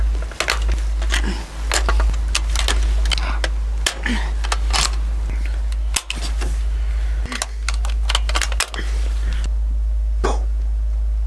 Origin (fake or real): real